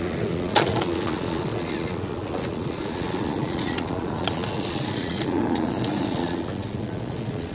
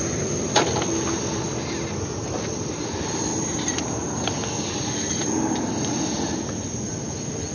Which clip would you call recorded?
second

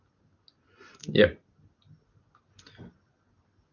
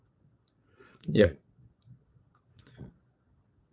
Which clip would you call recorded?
first